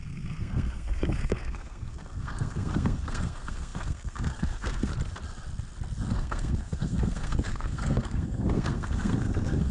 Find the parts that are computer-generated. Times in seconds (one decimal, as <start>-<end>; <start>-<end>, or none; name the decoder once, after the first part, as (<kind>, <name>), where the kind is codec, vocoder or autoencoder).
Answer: 0.0-4.9 (codec, SNAC); 6.1-9.7